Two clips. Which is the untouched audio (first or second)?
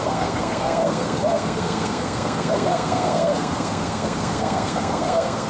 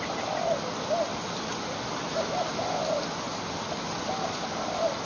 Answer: second